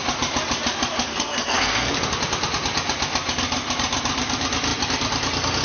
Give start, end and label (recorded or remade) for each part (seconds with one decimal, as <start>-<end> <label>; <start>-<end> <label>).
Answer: 0.0-1.1 recorded; 1.1-2.0 remade; 2.0-5.6 recorded